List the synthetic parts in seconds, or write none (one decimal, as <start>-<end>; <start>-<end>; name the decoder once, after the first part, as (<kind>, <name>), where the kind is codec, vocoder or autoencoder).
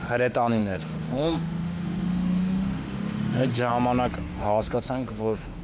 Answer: 0.0-3.7 (autoencoder, DAC-VAE); 4.3-5.6